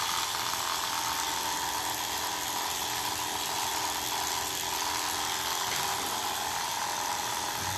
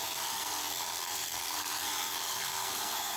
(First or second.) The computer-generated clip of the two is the second